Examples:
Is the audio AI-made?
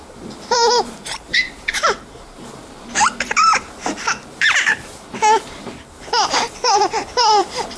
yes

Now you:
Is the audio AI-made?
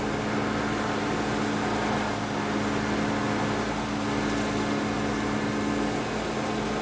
no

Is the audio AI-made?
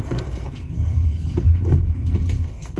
yes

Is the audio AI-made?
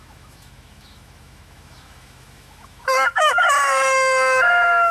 yes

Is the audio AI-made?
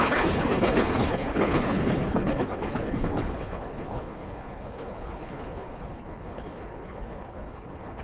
yes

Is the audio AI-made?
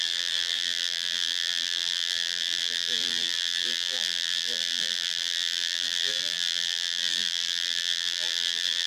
yes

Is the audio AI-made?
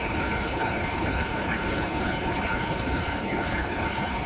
yes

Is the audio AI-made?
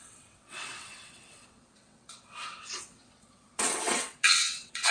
yes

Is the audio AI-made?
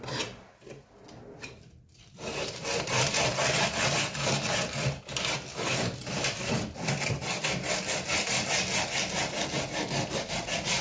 yes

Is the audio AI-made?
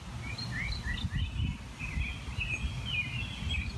no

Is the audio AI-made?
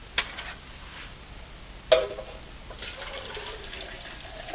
no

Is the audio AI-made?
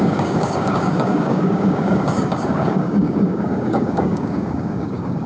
yes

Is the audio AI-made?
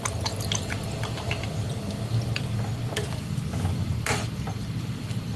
no